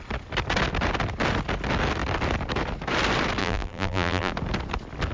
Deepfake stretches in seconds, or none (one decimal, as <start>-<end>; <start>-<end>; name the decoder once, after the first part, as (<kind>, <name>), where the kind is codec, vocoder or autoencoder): 3.4-4.3 (vocoder, BigVGAN v2)